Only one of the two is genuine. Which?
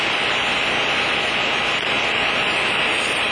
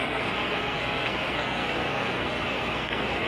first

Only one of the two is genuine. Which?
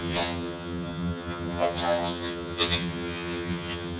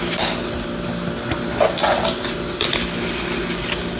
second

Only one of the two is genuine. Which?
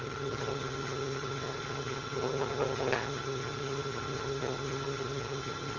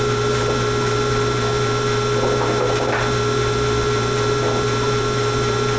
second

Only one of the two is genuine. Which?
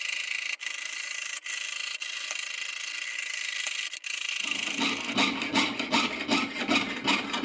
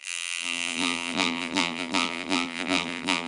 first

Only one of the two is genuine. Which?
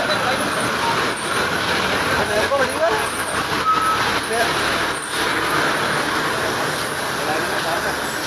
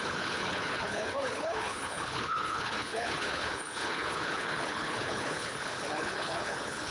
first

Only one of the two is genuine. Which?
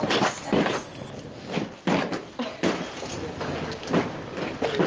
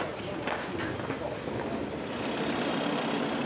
second